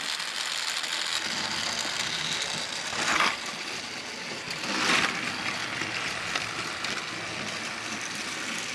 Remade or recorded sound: recorded